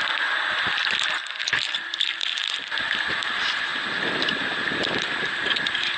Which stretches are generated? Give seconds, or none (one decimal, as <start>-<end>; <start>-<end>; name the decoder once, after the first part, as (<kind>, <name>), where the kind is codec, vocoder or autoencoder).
none

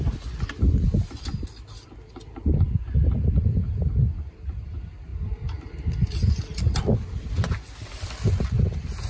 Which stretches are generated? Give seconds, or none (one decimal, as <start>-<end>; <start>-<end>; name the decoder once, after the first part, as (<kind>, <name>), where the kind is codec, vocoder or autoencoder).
none